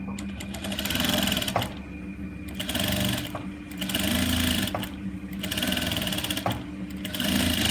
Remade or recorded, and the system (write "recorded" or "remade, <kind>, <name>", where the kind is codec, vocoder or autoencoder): recorded